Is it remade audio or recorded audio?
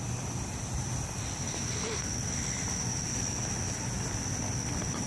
recorded